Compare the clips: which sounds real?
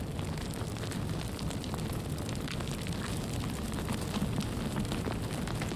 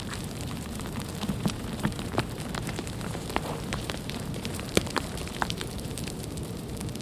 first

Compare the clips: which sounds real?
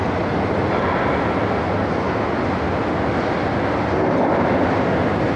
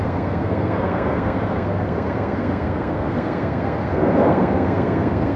first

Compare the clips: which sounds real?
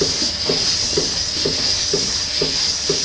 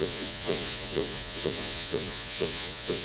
first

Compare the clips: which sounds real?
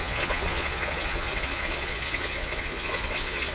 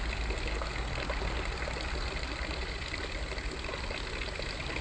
second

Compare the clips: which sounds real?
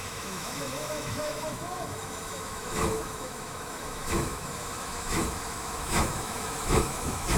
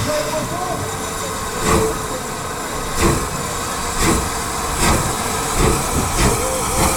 second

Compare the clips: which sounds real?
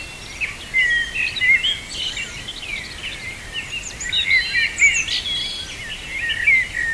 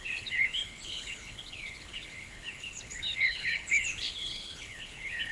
first